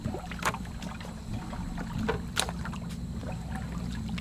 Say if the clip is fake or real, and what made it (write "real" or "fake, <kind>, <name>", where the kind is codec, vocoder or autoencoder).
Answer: real